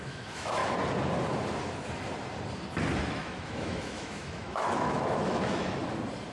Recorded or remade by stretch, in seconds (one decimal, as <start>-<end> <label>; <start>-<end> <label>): 0.0-0.6 remade; 0.6-3.1 recorded; 3.1-5.8 remade; 5.8-6.3 recorded

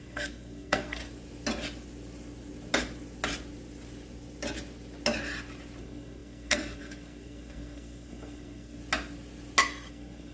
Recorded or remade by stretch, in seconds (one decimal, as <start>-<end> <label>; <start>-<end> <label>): 0.0-1.0 remade; 1.0-5.8 recorded; 5.8-8.8 remade; 8.8-9.9 recorded; 9.9-10.3 remade

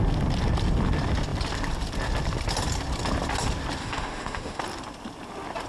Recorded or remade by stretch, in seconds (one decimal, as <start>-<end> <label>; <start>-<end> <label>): 0.0-3.8 recorded; 3.8-4.6 remade; 4.6-5.7 recorded

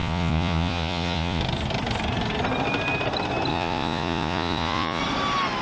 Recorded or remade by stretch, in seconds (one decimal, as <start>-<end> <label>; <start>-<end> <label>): 0.0-1.4 remade; 1.4-3.5 recorded; 3.5-5.0 remade; 5.0-5.6 recorded

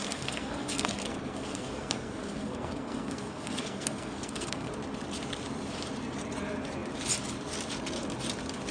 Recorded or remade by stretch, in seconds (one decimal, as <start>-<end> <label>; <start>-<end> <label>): 0.0-4.7 remade; 4.7-8.7 recorded